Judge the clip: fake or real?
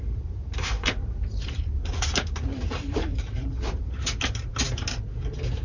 fake